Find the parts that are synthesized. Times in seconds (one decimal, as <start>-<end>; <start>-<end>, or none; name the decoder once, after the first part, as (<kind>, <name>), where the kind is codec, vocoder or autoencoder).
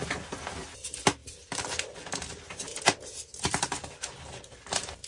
0.0-0.7 (vocoder, BigVGAN v2); 1.2-4.3